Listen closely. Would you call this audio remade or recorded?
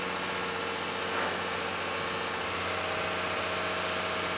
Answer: recorded